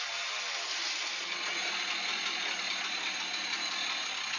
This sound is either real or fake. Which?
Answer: real